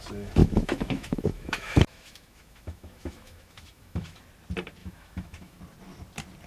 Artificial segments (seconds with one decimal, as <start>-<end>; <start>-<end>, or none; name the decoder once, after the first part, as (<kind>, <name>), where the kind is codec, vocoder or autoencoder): 0.4-4.2 (autoencoder, DAC-VAE); 4.8-5.6

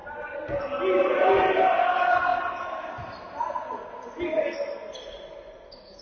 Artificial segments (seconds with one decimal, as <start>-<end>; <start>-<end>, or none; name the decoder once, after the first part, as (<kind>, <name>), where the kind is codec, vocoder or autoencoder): none

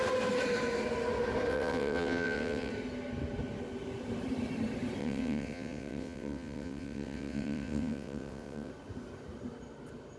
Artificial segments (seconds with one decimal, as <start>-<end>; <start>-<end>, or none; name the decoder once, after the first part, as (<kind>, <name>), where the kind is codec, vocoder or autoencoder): 1.5-2.7 (vocoder, WaveNeXt); 5.0-8.7

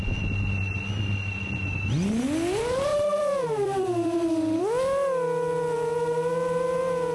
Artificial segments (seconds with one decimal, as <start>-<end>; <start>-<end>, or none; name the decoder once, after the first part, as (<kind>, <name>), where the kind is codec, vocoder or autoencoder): 2.9-4.6 (vocoder, BigVGAN v2)

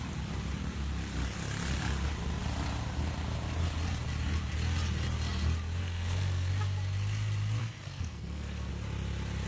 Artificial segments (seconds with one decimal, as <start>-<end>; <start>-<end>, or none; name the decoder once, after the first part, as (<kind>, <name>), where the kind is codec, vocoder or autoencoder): 5.8-6.5 (codec, SNAC); 7.6-8.7